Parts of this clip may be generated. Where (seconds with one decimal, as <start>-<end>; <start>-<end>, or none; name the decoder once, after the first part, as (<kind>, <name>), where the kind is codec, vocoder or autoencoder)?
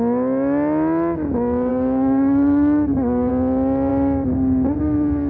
1.7-3.3 (codec, DAC)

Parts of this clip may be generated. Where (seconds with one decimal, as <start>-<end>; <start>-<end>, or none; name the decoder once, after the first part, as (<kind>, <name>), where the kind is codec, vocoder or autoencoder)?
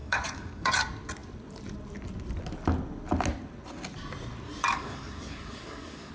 0.0-0.7 (codec, DAC); 4.6-6.1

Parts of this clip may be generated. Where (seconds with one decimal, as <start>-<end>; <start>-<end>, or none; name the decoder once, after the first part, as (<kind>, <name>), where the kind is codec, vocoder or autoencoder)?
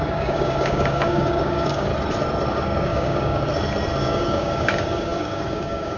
0.0-1.9 (codec, DAC); 2.5-3.5; 4.0-6.0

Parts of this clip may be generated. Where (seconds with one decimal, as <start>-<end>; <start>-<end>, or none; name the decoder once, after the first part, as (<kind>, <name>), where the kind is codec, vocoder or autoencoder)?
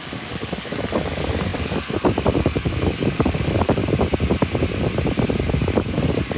0.0-3.8 (codec, DAC); 5.6-6.4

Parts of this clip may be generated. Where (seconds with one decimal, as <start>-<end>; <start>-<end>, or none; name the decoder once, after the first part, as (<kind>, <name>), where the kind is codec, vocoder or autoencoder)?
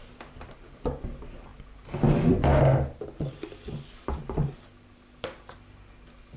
none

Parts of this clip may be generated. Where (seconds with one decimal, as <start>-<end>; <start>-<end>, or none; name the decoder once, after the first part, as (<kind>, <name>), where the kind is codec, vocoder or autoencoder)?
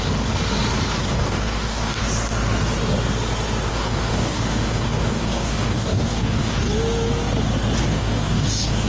1.0-2.0 (codec, DAC); 3.7-6.7; 7.9-8.9